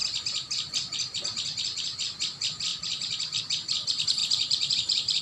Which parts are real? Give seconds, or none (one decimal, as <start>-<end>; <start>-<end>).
0.0-2.7; 3.4-4.2